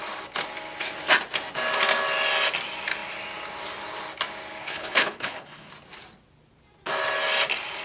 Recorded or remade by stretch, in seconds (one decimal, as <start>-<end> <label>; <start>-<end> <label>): 0.0-4.6 recorded; 4.6-5.7 remade; 5.7-7.8 recorded